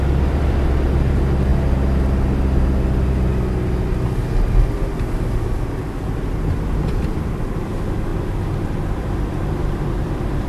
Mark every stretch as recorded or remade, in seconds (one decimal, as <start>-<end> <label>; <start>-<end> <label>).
0.0-1.5 remade; 1.5-4.9 recorded; 4.9-8.1 remade; 8.1-8.9 recorded; 8.9-10.5 remade